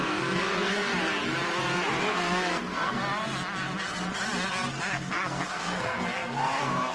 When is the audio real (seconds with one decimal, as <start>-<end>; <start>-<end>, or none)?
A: 0.9-2.0; 3.0-4.9